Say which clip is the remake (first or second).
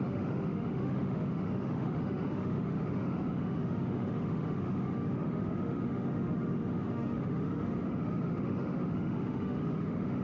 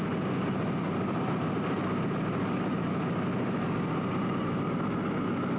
first